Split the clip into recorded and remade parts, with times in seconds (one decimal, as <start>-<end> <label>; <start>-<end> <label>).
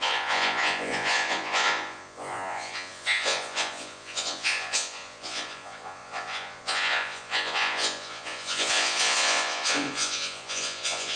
0.0-11.2 remade